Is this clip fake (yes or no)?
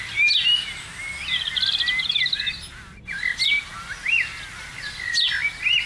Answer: no